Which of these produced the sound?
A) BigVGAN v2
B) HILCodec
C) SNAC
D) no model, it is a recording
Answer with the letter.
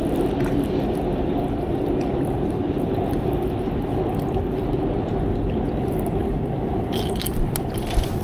D